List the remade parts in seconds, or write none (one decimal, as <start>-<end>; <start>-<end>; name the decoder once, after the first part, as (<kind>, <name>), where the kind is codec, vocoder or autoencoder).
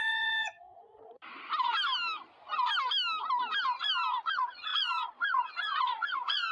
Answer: 0.0-1.2 (vocoder, Vocos); 4.2-6.5